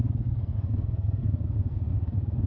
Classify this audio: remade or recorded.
remade